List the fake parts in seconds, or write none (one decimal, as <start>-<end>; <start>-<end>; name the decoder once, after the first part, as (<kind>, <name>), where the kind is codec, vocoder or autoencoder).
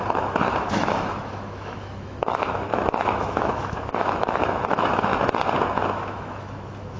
0.0-5.1 (autoencoder, DAC-VAE); 5.9-7.0